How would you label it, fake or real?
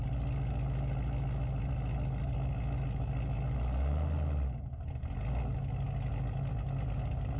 real